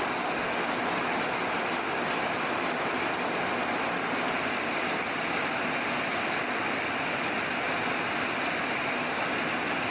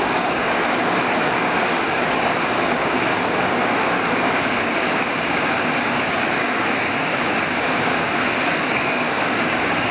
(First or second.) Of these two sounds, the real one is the first